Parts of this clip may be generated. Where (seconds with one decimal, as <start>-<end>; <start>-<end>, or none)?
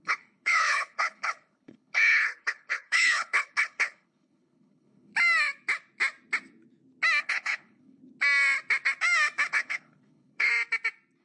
0.0-5.1; 7.2-8.0; 9.5-10.5